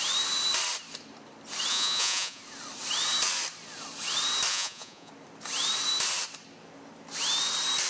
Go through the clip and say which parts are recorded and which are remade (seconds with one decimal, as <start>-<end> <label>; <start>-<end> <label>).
0.0-1.7 recorded; 1.7-2.4 remade; 2.4-4.5 recorded; 4.5-5.1 remade; 5.1-7.9 recorded